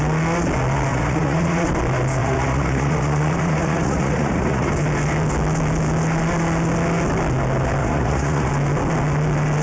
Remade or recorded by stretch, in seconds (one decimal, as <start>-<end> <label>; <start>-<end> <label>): 0.0-0.9 recorded; 0.9-1.7 remade; 1.7-2.2 recorded; 2.2-4.7 remade; 4.7-7.8 recorded; 7.8-8.5 remade; 8.5-9.6 recorded

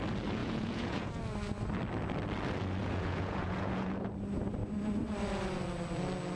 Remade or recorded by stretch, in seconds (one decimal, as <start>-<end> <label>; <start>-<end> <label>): 0.0-0.4 recorded; 0.4-1.1 remade; 1.1-2.8 recorded; 2.8-4.1 remade; 4.1-6.4 recorded

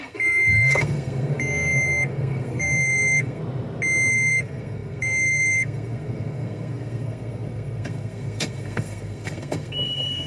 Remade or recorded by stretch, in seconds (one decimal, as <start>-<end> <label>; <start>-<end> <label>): 0.0-3.4 remade; 3.4-4.1 recorded; 4.1-10.3 remade

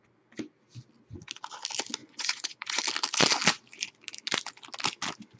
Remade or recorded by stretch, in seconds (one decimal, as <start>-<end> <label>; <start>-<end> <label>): 0.0-2.0 recorded; 2.0-2.8 remade; 2.8-5.4 recorded

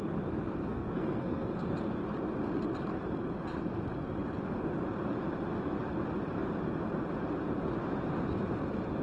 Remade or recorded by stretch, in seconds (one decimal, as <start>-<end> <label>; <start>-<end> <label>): 0.0-0.6 recorded; 0.6-1.7 remade; 1.7-9.0 recorded

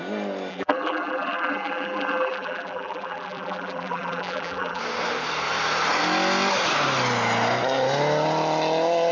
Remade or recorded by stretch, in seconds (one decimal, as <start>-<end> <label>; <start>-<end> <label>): 0.0-0.5 recorded; 0.5-4.8 remade; 4.8-9.1 recorded

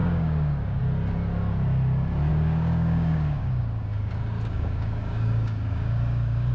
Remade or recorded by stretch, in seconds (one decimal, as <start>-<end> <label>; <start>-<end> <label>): 0.0-0.8 remade; 0.8-2.3 recorded; 2.3-6.5 remade